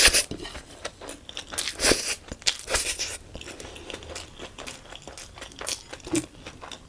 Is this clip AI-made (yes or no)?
no